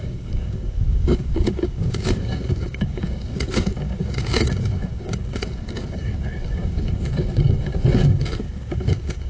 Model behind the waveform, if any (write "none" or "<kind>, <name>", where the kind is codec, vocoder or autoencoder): codec, DAC